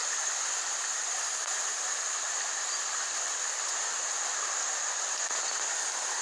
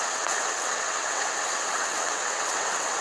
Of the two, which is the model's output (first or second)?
second